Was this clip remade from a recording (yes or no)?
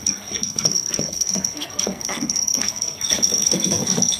yes